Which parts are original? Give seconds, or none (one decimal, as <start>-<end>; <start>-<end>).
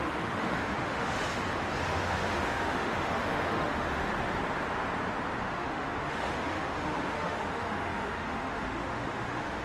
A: 1.2-1.8; 4.1-5.4